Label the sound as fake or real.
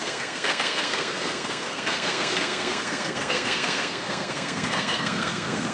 fake